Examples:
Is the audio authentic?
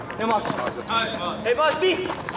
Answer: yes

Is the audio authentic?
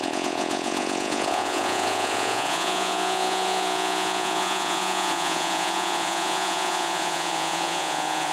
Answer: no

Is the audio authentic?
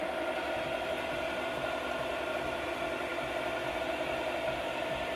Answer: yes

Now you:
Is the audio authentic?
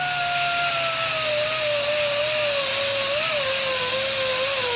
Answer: yes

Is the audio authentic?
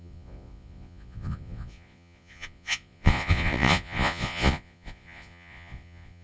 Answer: no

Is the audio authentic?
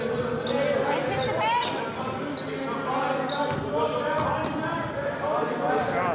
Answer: yes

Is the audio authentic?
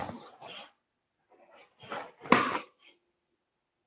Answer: yes